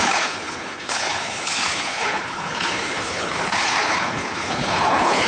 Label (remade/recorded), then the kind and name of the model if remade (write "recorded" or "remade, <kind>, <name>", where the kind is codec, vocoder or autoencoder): remade, codec, HILCodec